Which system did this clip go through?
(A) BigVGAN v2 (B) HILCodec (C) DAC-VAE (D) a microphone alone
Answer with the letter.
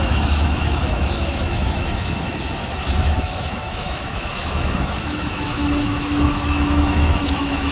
C